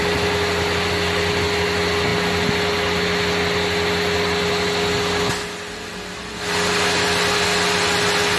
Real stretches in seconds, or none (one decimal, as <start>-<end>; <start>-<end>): 0.0-8.4